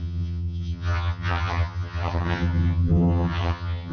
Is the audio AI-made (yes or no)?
yes